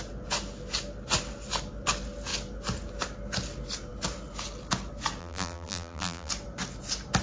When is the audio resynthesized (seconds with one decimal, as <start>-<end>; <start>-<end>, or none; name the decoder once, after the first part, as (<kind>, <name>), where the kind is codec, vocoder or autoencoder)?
5.2-6.3 (vocoder, BigVGAN v2)